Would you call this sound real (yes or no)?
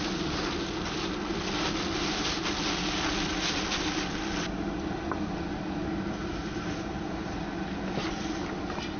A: yes